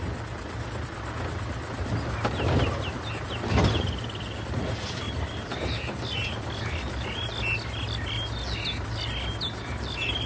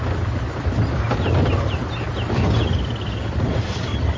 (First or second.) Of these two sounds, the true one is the first